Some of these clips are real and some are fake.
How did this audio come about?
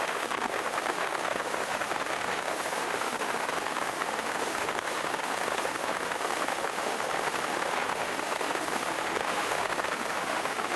fake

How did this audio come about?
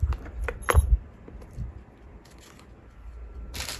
real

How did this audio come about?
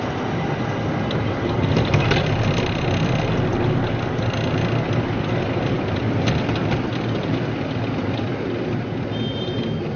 real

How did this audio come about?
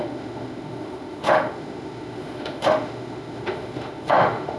fake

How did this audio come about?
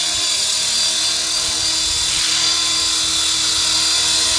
real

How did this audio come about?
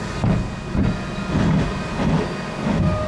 real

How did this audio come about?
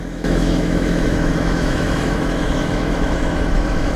fake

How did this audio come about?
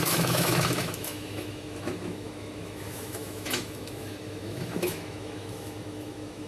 fake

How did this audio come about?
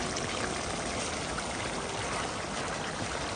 real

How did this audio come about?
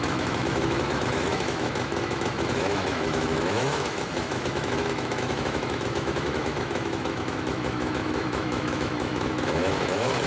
fake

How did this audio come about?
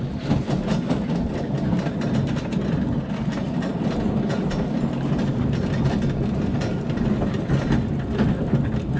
real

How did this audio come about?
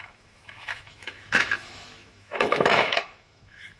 fake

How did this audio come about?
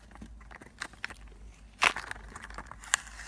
real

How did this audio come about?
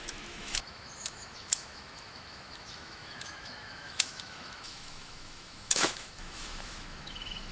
fake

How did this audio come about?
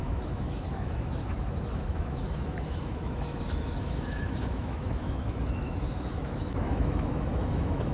fake